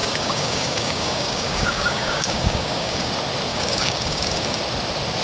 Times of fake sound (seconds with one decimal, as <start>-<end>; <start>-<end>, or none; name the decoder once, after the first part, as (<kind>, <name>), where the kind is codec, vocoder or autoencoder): 0.0-3.1 (codec, DAC); 3.5-4.6